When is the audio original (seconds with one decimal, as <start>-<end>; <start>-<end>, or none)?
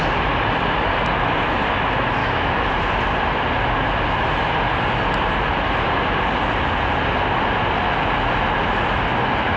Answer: 0.0-2.2; 2.7-9.6